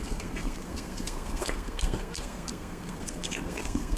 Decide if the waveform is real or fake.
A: fake